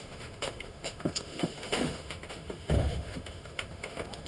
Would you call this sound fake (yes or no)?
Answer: yes